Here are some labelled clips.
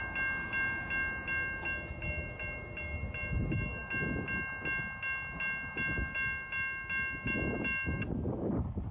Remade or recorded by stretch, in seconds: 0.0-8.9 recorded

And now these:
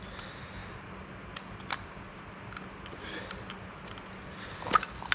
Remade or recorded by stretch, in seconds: 0.0-5.1 recorded